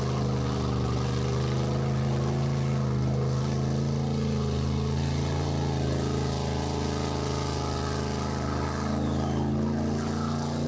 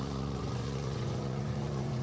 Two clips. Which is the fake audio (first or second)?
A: second